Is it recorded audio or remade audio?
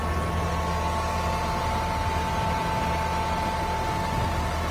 recorded